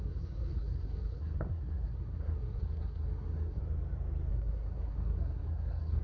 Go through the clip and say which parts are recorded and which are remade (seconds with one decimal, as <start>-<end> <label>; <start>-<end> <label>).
0.0-3.6 remade; 3.6-4.3 recorded; 4.3-6.0 remade